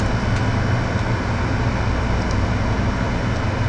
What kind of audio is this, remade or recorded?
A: recorded